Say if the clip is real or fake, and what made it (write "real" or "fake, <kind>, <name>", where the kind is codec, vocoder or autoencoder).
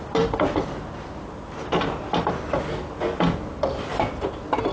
real